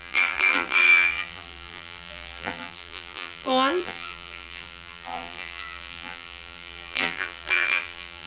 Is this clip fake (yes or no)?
yes